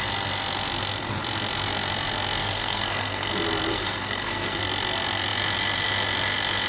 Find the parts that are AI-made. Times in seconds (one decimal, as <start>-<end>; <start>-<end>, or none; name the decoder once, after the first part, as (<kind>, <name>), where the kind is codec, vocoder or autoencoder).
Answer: 2.4-3.3 (codec, SNAC); 3.7-4.6